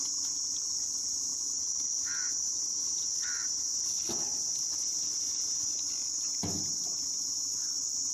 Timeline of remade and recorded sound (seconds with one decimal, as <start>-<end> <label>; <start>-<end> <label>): 0.0-8.1 recorded